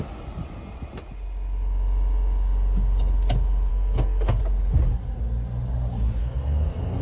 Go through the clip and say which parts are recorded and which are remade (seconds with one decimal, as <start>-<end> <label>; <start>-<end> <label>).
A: 0.0-3.7 recorded; 3.7-4.4 remade; 4.4-6.2 recorded; 6.2-7.0 remade